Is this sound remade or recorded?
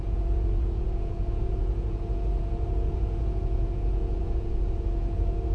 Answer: remade